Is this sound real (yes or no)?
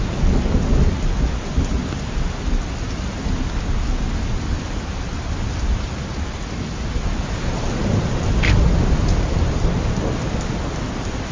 yes